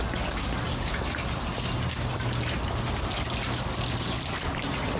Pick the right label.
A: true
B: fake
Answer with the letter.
A